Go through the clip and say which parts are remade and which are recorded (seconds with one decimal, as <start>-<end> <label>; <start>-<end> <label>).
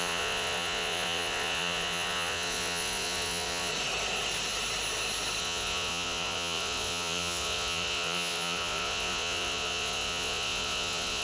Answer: 0.0-3.7 remade; 3.7-5.4 recorded; 5.4-11.2 remade